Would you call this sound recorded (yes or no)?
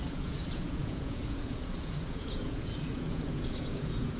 no